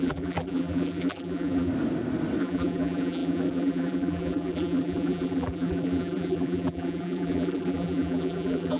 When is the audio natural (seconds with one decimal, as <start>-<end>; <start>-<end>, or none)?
1.7-2.4